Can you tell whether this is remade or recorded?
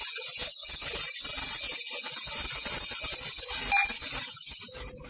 recorded